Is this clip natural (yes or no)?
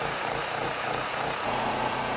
no